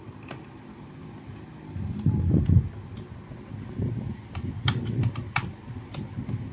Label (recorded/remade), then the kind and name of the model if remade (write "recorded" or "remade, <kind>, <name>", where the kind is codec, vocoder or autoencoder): recorded